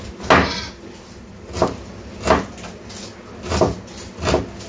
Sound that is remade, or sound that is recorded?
recorded